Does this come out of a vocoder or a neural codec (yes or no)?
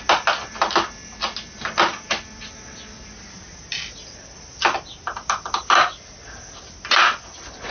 no